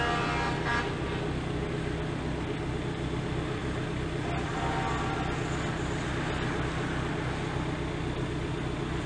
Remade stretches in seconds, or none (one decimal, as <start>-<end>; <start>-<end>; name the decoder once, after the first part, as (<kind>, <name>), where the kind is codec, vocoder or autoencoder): none